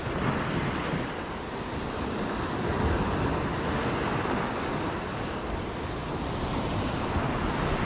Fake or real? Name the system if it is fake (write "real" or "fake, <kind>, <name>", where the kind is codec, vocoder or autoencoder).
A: real